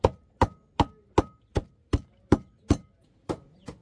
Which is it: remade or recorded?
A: recorded